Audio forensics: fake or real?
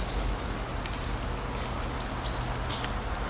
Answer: real